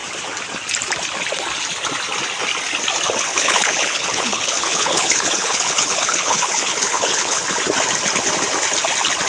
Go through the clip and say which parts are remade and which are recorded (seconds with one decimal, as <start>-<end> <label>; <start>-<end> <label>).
0.0-3.3 recorded; 3.3-7.4 remade; 7.4-9.3 recorded